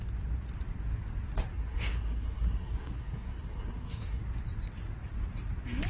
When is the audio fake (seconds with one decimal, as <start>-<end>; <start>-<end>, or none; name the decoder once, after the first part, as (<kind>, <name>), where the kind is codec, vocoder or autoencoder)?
1.5-4.2 (codec, SNAC)